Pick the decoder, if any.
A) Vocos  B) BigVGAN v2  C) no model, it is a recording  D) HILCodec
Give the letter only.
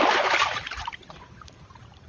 B